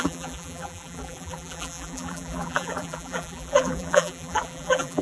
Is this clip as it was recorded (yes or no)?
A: no